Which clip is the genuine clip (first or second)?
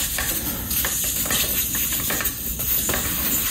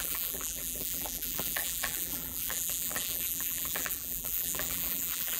first